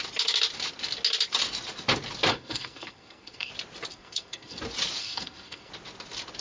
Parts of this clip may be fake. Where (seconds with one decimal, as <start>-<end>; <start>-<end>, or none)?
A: 2.3-3.5; 3.9-4.6; 5.0-5.7